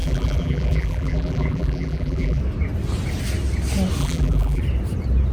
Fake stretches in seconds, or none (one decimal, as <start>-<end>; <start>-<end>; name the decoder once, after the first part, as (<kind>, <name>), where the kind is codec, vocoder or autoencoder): 0.0-2.4 (vocoder, BigVGAN v2); 4.0-4.6